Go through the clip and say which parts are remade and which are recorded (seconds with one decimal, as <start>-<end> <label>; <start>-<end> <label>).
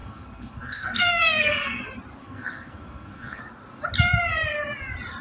0.0-1.8 remade; 1.8-2.2 recorded; 2.2-3.4 remade; 3.4-5.2 recorded